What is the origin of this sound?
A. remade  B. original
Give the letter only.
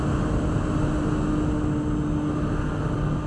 B